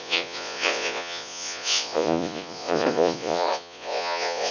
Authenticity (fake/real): fake